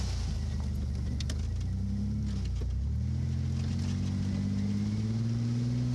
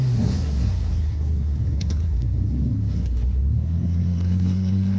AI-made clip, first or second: second